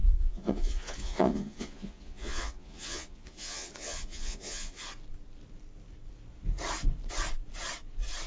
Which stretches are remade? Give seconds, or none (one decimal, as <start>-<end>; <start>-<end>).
0.0-4.8